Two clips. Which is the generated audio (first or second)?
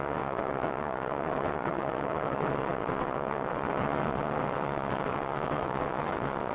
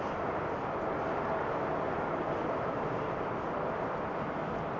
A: first